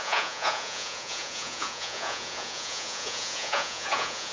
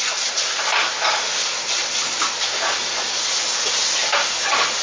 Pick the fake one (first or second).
first